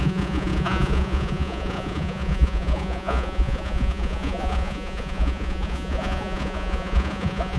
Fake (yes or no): yes